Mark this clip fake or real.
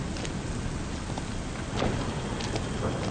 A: real